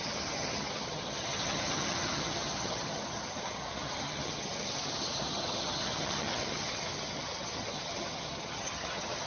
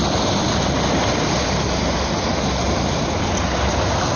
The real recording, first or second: second